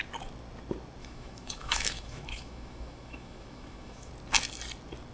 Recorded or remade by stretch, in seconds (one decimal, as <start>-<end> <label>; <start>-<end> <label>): 0.0-1.0 recorded; 1.0-4.1 remade; 4.1-5.1 recorded